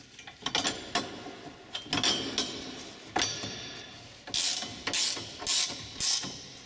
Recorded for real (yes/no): yes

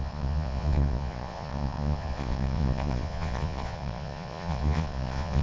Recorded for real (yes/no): no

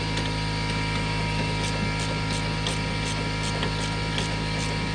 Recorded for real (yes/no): yes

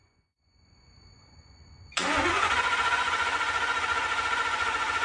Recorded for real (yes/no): no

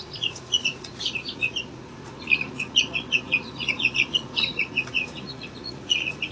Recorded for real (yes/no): no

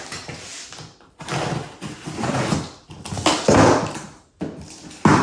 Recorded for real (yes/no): yes